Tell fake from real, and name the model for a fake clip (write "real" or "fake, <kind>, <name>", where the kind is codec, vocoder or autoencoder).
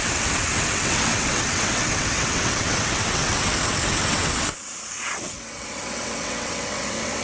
fake, vocoder, WaveNeXt